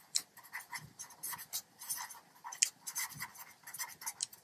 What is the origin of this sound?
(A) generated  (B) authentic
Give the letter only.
B